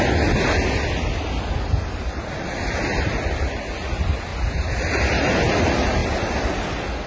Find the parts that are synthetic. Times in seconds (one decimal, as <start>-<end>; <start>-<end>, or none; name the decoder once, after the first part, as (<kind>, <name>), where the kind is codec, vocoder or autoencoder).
none